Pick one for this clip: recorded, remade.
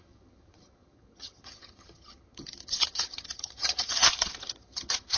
remade